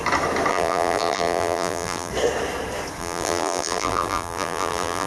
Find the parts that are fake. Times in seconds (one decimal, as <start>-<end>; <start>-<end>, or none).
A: 0.5-2.1; 3.0-5.1